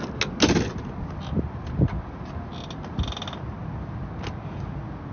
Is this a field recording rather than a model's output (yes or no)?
yes